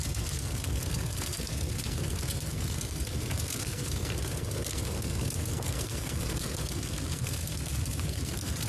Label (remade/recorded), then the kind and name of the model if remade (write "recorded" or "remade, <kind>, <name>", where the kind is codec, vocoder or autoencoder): remade, codec, SNAC